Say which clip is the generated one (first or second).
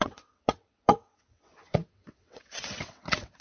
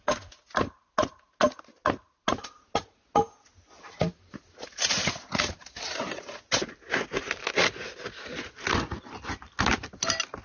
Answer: first